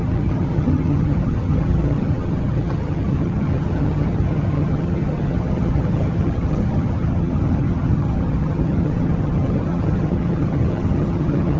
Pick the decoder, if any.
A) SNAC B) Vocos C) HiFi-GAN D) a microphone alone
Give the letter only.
C